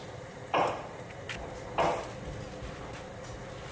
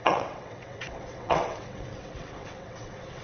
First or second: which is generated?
second